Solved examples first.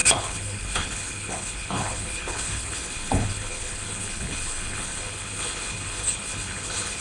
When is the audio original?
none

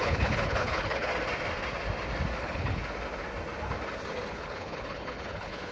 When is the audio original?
1.1-2.4; 2.8-4.3

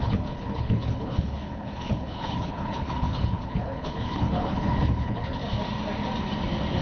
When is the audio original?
5.4-6.8

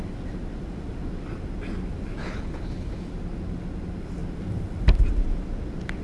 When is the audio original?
0.0-2.2; 3.1-6.0

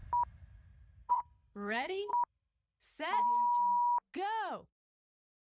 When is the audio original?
0.0-1.1; 2.1-5.5

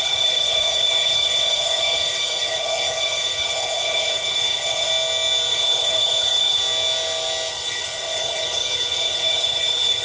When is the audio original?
4.9-5.5; 6.6-7.5